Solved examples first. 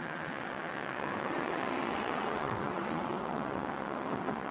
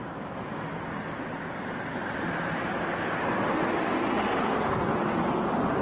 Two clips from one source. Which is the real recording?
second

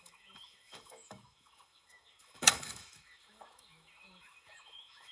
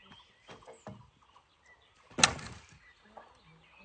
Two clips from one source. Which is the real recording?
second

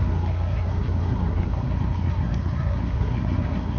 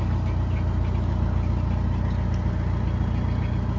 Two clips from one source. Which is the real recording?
second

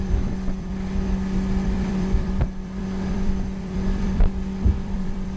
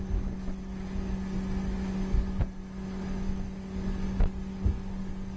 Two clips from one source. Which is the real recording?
second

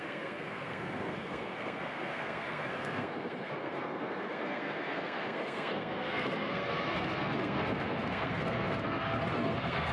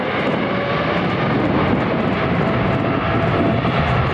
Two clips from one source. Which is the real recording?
second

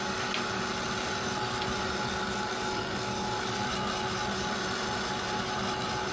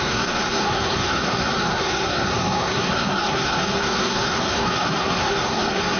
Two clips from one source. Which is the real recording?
first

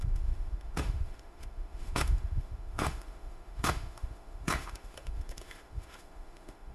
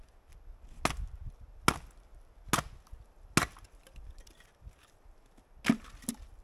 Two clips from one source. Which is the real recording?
second